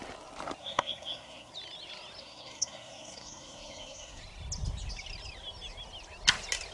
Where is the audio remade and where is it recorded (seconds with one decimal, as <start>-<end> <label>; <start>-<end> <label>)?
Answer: 0.0-0.6 recorded; 0.6-1.5 remade; 1.5-2.2 recorded; 2.2-4.2 remade; 4.2-6.7 recorded